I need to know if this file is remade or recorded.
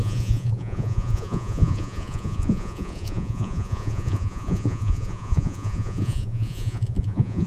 remade